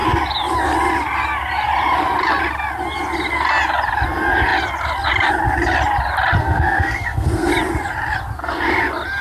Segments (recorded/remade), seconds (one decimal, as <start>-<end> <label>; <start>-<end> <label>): 0.0-6.4 recorded; 6.4-7.5 remade; 7.5-9.2 recorded